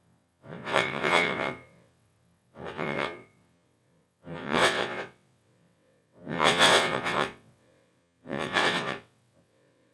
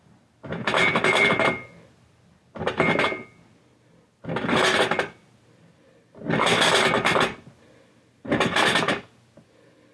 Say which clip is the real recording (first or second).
second